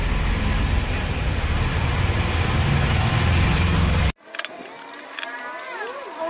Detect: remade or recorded recorded